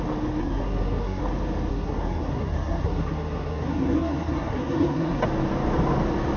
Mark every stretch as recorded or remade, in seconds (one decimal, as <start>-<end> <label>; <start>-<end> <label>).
0.0-0.4 recorded; 0.4-1.2 remade; 1.2-1.7 recorded; 1.7-5.2 remade; 5.2-6.4 recorded